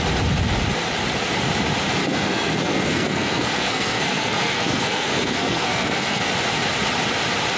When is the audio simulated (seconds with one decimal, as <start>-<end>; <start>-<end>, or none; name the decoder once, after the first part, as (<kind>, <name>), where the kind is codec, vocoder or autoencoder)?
2.0-6.3 (codec, SNAC)